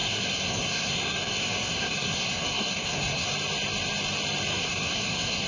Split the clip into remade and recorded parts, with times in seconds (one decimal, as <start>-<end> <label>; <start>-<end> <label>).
0.0-3.3 remade; 3.3-4.5 recorded; 4.5-5.5 remade